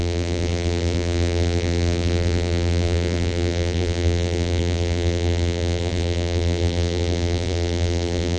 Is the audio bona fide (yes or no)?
no